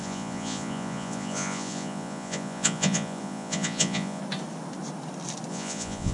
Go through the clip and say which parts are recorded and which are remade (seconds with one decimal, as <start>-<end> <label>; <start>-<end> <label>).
0.0-4.2 remade; 4.2-5.5 recorded; 5.5-6.1 remade